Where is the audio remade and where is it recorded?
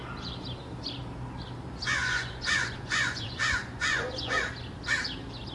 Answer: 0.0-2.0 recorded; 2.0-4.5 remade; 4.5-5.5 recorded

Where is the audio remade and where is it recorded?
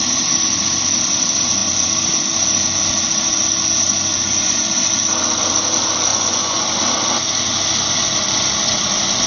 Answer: 0.0-4.1 recorded; 4.1-4.7 remade; 4.7-6.1 recorded; 6.1-6.6 remade; 6.6-9.3 recorded